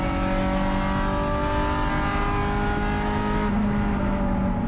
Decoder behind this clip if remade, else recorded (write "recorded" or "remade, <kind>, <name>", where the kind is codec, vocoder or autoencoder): recorded